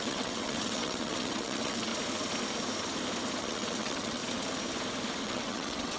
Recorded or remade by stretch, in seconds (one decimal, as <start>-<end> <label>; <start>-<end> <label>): 0.0-1.9 remade; 1.9-3.4 recorded; 3.4-4.2 remade; 4.2-5.2 recorded; 5.2-6.0 remade